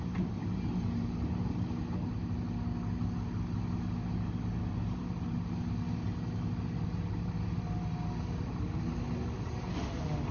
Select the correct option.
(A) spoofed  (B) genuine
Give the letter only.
B